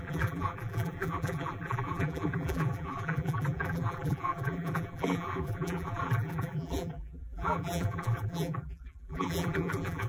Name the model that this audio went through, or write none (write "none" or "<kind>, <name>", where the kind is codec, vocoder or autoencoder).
vocoder, BigVGAN v2